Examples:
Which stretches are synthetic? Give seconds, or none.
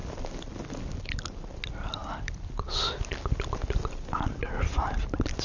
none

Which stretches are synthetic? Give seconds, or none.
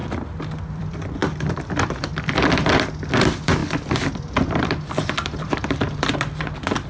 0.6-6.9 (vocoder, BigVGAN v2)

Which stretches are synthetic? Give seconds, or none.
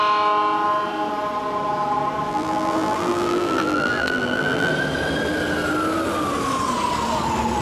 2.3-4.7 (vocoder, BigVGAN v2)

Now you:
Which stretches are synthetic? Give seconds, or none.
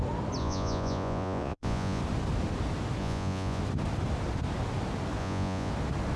0.4-2.0 (vocoder, Vocos); 3.0-3.6; 5.2-5.7